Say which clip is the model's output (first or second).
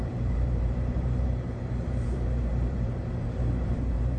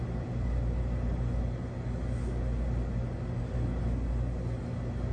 first